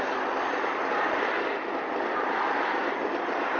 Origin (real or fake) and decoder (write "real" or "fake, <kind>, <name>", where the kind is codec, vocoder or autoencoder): real